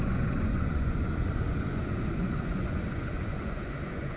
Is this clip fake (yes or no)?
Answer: yes